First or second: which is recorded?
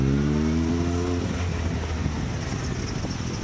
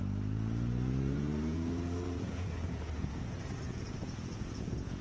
first